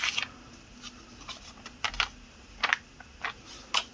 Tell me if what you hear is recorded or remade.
recorded